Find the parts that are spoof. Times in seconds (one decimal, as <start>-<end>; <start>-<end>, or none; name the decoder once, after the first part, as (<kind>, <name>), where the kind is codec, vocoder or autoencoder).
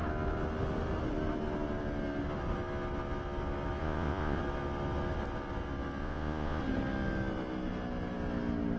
3.8-4.4 (vocoder, Vocos); 6.0-6.6